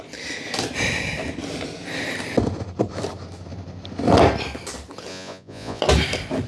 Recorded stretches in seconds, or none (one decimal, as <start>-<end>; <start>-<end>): 0.0-5.1; 5.8-6.5